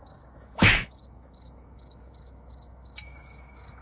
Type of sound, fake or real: fake